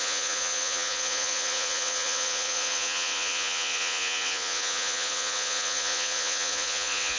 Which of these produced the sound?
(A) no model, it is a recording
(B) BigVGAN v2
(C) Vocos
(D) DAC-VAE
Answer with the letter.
C